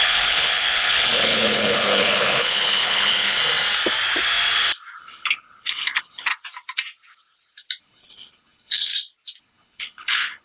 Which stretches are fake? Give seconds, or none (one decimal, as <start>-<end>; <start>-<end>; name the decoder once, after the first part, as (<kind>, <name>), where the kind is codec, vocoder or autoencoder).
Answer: 0.0-3.4 (codec, HILCodec); 5.0-6.3; 7.8-8.9; 9.4-10.4

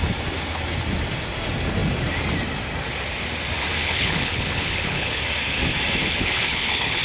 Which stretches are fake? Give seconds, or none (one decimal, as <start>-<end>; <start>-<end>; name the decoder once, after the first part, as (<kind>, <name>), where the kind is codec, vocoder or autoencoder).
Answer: 3.8-5.2 (codec, HILCodec); 6.0-7.0

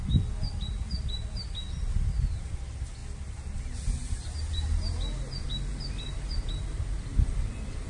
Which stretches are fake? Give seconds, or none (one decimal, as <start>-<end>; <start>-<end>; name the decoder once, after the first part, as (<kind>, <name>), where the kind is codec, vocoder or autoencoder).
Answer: none

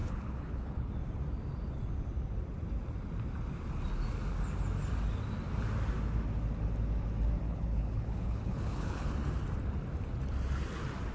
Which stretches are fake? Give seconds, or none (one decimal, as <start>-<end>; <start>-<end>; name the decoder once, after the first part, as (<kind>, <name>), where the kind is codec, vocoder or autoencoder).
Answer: 0.0-0.9 (codec, HILCodec); 7.4-9.1

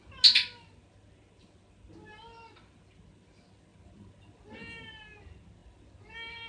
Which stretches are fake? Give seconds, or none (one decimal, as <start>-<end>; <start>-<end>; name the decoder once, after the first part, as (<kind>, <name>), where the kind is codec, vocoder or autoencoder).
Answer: none

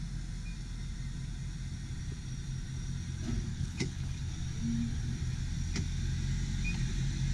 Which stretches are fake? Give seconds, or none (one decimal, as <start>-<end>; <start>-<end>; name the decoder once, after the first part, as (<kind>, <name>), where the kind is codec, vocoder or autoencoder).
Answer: 3.5-4.3 (codec, HILCodec)